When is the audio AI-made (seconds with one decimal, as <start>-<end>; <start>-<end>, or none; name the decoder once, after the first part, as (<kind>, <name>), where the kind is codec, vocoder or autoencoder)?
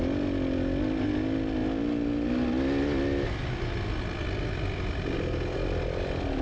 none